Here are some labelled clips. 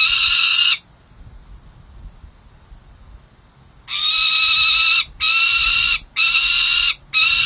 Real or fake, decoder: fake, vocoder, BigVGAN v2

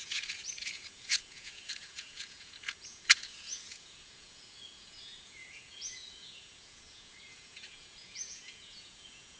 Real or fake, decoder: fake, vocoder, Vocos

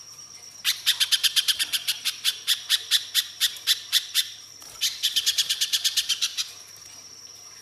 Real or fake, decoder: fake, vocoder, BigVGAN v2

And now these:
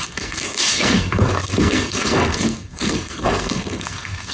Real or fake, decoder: fake, codec, SNAC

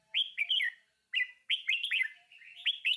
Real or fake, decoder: real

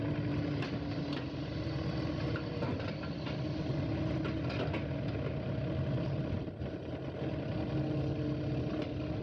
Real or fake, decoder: real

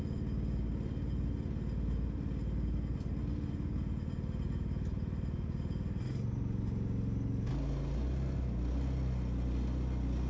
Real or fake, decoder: real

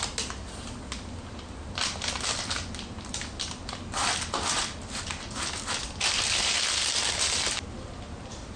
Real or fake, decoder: real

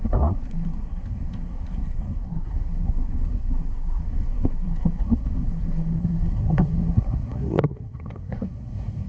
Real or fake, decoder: fake, codec, SNAC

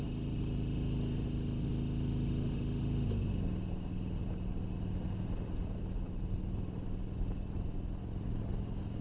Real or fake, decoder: real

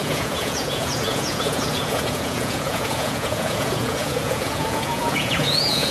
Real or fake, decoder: fake, vocoder, Vocos